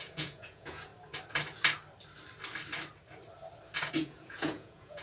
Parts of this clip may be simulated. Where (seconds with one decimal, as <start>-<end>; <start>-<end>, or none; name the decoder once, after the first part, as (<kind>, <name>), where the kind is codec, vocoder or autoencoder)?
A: 0.0-0.9 (vocoder, Vocos); 3.9-5.0